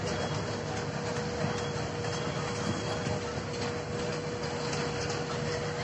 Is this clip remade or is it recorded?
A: recorded